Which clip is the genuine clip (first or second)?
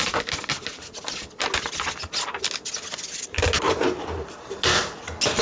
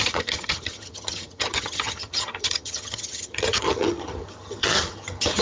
first